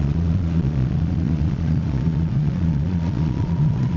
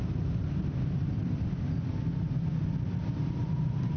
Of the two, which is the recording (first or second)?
second